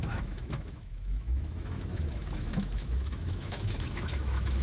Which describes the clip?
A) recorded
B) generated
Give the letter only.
B